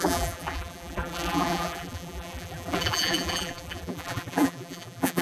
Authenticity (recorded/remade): remade